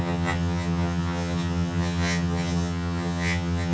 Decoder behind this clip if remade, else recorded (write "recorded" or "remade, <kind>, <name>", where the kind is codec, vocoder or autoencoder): remade, vocoder, HiFi-GAN